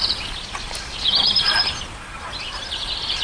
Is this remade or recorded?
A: recorded